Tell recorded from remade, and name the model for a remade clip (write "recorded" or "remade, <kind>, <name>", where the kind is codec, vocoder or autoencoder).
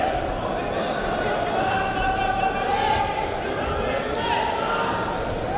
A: recorded